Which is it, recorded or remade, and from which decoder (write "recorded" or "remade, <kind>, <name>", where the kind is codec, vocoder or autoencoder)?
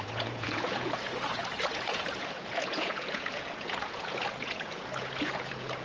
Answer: remade, vocoder, Vocos